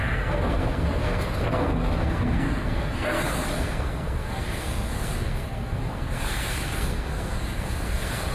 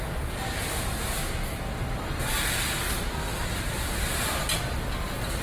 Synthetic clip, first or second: first